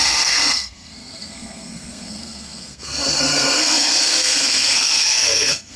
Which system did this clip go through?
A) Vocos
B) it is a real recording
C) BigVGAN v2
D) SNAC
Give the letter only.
D